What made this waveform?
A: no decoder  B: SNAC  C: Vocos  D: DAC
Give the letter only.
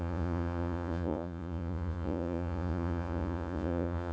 C